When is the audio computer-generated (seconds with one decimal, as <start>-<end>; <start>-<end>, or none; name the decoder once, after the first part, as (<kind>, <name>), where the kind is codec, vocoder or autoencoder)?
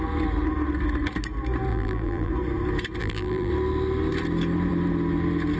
1.7-2.3 (vocoder, BigVGAN v2); 3.0-3.5